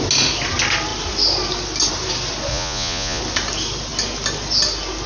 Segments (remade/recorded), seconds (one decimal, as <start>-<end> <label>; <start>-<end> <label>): 0.0-2.5 recorded; 2.5-3.2 remade; 3.2-5.1 recorded